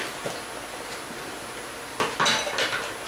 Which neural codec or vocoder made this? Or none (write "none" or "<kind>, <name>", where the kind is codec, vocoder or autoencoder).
none